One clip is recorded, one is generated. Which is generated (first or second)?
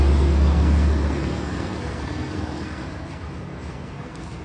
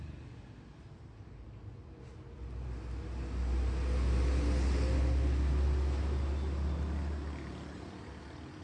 first